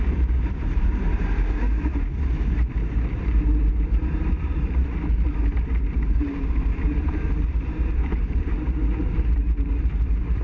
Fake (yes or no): yes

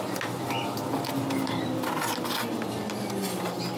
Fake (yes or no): no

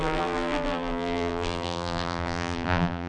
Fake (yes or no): yes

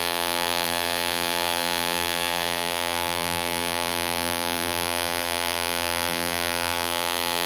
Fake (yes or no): yes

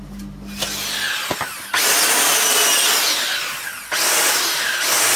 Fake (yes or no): no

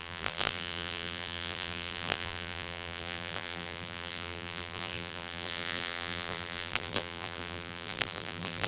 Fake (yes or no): yes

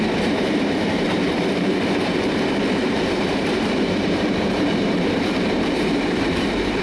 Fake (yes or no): yes